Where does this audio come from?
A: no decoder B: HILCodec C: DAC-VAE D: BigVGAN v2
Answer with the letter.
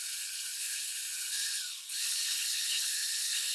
B